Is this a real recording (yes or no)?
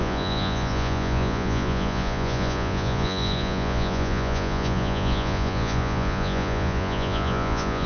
no